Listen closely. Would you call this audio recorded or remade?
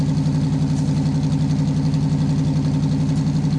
recorded